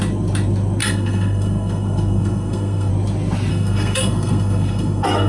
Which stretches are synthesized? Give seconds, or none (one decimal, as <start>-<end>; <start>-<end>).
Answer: 0.8-2.9; 3.5-5.3